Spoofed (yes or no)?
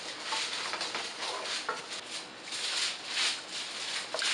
no